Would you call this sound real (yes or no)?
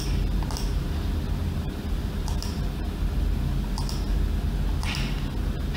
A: yes